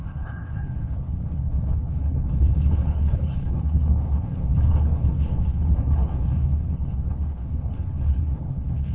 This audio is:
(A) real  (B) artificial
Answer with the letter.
B